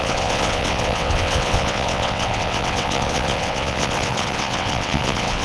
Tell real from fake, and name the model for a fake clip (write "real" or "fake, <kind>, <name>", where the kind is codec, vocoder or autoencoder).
fake, vocoder, WaveNeXt